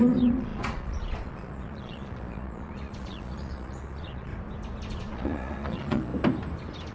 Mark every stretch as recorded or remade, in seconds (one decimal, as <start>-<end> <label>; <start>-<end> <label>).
0.0-4.3 remade; 4.3-4.9 recorded; 4.9-6.1 remade; 6.1-6.9 recorded